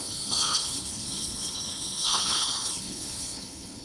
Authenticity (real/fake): fake